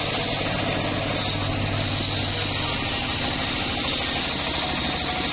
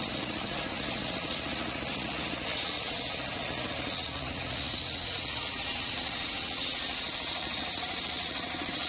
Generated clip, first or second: second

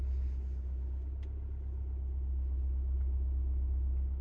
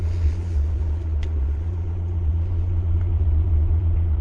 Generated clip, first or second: second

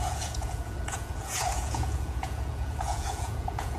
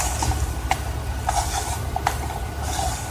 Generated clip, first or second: first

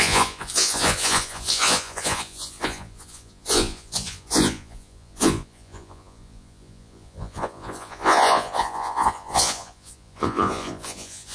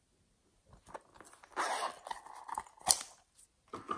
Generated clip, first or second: first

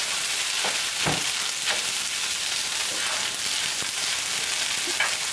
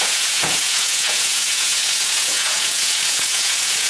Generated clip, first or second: second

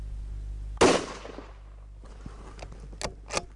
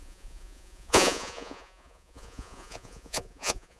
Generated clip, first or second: second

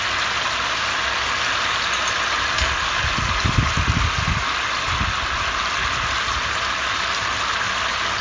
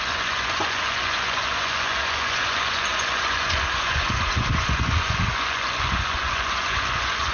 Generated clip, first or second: second